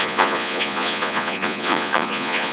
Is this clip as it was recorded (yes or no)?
no